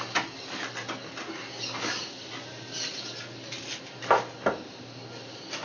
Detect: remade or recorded recorded